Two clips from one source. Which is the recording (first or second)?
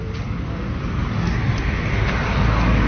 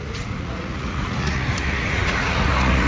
first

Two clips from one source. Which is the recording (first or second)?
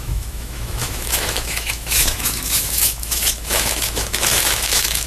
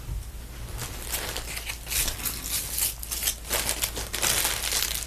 second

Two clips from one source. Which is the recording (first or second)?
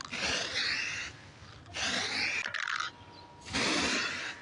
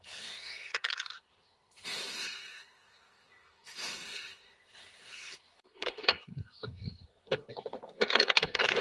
first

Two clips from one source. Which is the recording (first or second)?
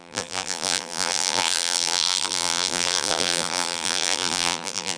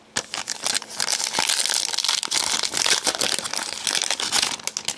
second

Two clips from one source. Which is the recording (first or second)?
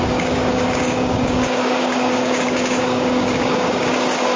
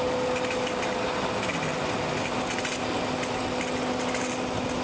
second